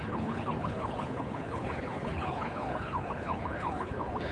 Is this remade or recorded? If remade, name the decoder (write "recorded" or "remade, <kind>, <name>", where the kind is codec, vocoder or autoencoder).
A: remade, codec, HILCodec